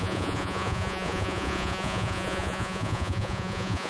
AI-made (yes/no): yes